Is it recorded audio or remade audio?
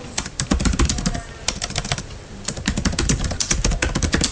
remade